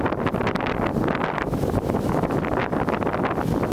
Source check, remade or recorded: recorded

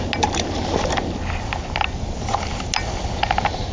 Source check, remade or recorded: recorded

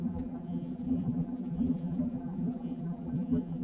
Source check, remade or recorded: remade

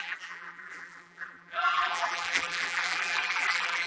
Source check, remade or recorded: remade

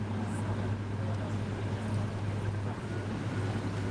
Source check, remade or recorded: recorded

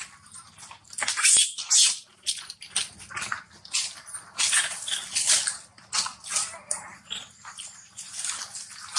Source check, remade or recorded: recorded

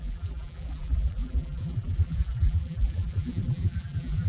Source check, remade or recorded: remade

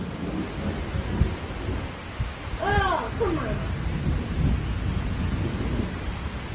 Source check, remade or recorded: recorded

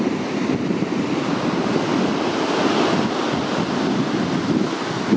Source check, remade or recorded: recorded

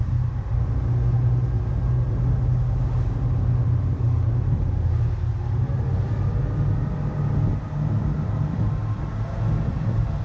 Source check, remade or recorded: recorded